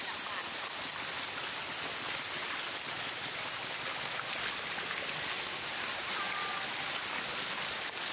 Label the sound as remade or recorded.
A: recorded